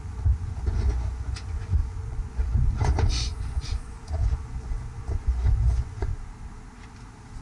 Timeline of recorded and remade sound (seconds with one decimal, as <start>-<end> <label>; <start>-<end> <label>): 0.0-6.1 remade; 6.1-7.4 recorded